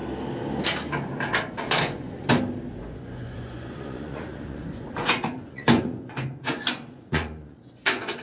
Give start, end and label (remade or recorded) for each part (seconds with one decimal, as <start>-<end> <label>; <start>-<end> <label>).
0.0-1.8 recorded; 1.8-2.2 remade; 2.2-2.7 recorded; 2.7-8.2 remade